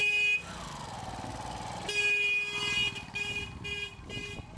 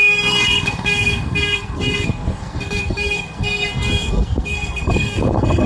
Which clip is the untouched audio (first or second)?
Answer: first